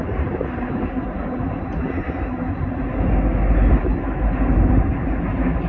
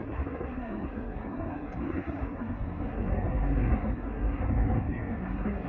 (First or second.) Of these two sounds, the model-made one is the second